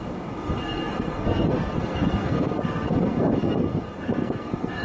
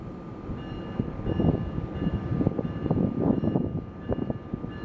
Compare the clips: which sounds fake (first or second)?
first